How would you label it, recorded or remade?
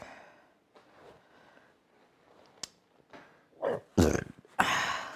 recorded